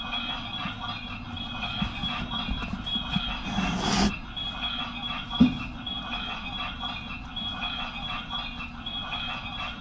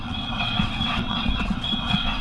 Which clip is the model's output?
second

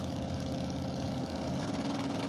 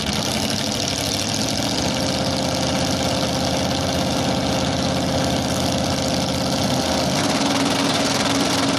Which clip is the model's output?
first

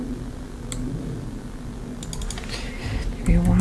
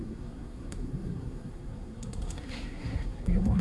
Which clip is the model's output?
second